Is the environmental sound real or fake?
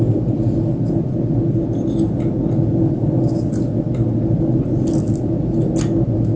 real